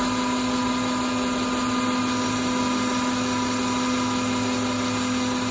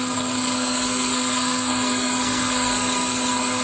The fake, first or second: second